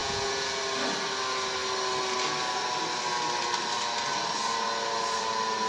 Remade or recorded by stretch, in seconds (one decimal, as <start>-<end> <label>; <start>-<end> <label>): 0.0-0.6 remade; 0.6-5.7 recorded